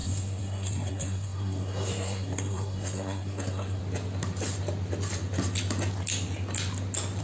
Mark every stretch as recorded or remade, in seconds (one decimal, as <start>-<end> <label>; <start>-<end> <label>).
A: 0.0-3.8 remade; 3.8-7.2 recorded